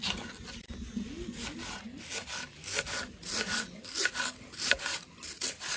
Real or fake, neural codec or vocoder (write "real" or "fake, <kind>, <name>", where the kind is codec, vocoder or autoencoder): real